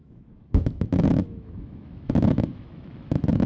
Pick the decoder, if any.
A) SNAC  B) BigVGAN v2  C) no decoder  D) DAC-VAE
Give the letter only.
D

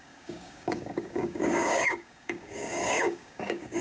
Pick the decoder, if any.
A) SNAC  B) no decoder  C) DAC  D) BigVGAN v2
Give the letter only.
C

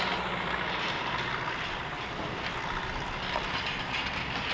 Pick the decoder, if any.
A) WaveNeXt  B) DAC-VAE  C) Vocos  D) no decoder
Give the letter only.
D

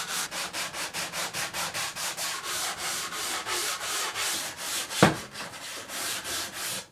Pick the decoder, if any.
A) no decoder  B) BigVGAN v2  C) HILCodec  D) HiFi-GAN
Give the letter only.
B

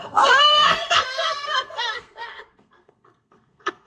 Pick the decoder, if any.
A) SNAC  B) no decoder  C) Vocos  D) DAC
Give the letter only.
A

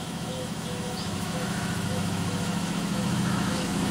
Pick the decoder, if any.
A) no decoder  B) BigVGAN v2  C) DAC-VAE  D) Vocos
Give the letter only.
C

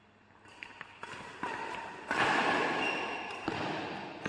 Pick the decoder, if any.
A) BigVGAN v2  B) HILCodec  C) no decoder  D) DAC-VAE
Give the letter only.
C